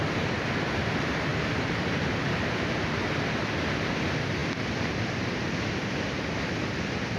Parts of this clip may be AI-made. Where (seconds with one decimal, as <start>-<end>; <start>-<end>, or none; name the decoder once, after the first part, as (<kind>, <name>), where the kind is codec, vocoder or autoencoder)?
1.3-3.1 (vocoder, BigVGAN v2)